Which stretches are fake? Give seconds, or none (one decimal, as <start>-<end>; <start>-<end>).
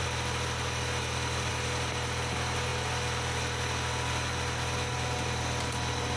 none